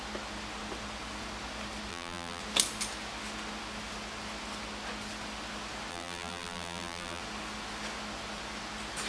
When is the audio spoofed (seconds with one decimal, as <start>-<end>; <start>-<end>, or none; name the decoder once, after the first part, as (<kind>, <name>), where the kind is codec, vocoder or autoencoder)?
1.9-2.4 (vocoder, BigVGAN v2); 5.9-7.2

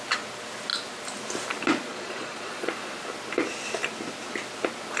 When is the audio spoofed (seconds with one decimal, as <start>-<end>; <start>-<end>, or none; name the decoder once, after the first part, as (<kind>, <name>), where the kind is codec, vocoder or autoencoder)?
1.9-2.7 (vocoder, Vocos)

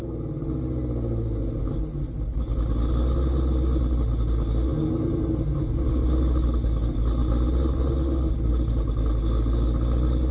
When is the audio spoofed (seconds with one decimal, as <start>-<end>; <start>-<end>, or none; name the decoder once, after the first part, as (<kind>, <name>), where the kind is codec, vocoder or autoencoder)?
none

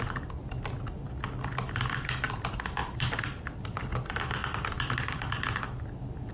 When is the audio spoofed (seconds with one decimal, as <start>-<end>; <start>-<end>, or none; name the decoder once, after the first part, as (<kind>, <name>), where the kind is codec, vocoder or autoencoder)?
2.8-6.3 (vocoder, BigVGAN v2)

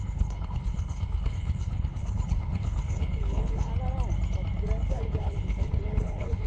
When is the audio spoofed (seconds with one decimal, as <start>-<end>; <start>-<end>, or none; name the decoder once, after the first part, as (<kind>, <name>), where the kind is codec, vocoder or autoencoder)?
0.0-3.7 (codec, HILCodec); 4.9-6.5

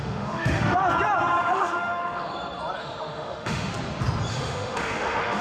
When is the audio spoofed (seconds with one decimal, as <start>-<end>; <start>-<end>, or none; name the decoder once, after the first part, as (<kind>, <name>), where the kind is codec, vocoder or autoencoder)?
0.0-0.8 (autoencoder, DAC-VAE); 1.4-2.3; 2.8-3.7; 4.3-5.4

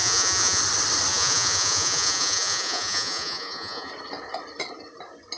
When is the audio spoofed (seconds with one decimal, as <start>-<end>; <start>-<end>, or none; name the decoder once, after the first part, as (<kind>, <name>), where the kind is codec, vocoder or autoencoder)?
0.0-0.6 (vocoder, Vocos); 1.1-3.9

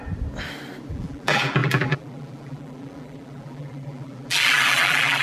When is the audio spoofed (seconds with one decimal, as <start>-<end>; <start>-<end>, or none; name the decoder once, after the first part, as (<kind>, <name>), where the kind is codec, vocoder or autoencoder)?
0.9-5.2 (vocoder, BigVGAN v2)